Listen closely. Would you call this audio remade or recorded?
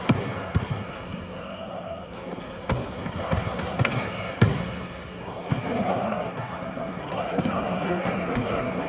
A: remade